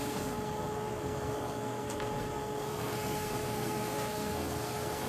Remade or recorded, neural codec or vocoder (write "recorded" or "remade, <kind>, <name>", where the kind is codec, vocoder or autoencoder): remade, codec, SNAC